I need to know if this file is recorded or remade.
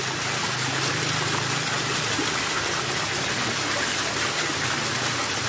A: recorded